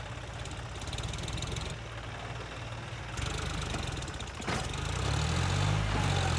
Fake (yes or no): no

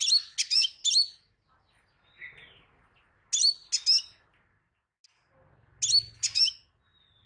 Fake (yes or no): no